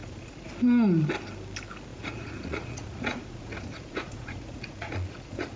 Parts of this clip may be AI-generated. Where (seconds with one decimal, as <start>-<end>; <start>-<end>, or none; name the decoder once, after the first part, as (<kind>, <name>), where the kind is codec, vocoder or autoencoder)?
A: 0.0-0.5 (vocoder, Vocos); 1.9-5.6